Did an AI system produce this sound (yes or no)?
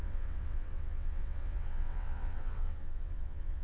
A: yes